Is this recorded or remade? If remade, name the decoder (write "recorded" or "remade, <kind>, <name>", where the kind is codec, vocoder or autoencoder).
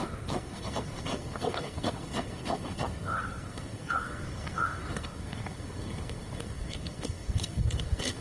remade, codec, SNAC